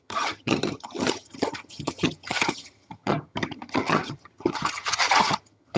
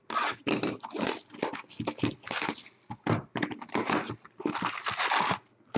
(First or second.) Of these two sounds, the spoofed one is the first